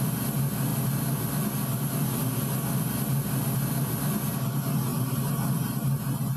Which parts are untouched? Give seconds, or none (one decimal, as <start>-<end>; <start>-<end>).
0.0-4.9; 6.0-6.4